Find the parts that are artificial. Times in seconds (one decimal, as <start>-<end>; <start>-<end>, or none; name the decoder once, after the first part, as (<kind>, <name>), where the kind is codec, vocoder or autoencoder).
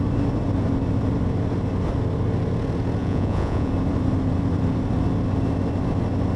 3.0-3.7 (vocoder, Vocos)